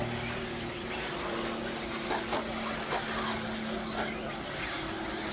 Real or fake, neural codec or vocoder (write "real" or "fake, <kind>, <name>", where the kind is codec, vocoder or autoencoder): real